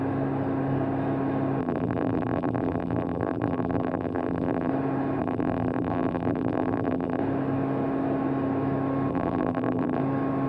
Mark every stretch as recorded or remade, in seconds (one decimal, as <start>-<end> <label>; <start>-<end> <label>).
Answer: 0.0-1.6 recorded; 1.6-4.7 remade; 4.7-5.2 recorded; 5.2-7.2 remade; 7.2-9.1 recorded; 9.1-10.0 remade; 10.0-10.5 recorded